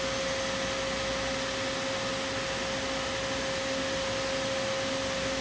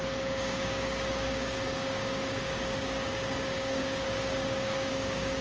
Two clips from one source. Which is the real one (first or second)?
first